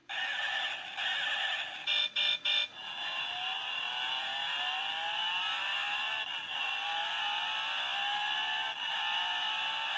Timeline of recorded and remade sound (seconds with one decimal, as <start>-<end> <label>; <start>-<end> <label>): 0.0-10.0 recorded